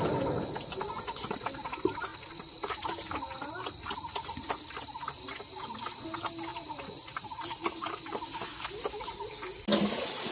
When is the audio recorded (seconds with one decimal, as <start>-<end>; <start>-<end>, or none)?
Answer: 0.0-2.1; 3.5-6.5; 7.1-10.3